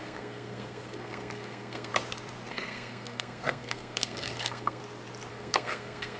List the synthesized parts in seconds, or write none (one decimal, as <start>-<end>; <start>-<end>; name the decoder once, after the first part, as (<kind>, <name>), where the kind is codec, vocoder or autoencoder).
0.0-1.9 (codec, SNAC); 2.5-4.8; 5.3-6.2